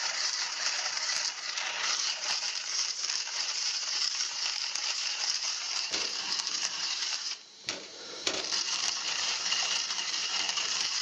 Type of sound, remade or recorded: remade